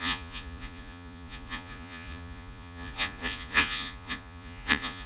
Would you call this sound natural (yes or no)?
no